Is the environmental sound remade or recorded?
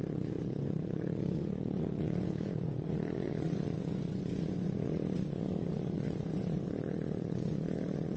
remade